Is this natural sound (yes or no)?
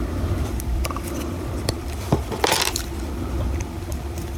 no